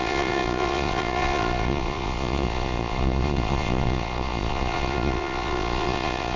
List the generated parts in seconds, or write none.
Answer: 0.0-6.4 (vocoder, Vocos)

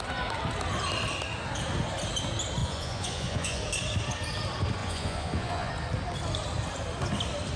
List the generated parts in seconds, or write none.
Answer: 2.6-3.6 (vocoder, Vocos); 4.8-5.7

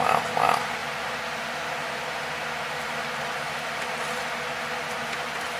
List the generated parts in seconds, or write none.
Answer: none

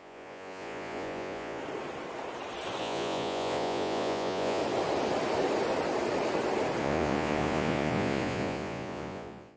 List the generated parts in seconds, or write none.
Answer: 0.0-1.6 (vocoder, Vocos); 2.8-4.6; 6.8-9.6

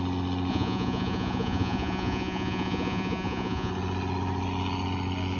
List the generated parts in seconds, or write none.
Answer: 0.5-3.7 (vocoder, Vocos)